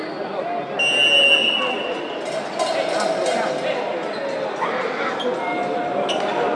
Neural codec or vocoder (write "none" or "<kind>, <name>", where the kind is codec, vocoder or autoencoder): none